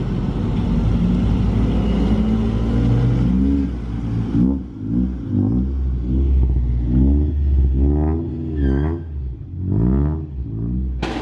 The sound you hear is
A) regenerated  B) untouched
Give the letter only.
B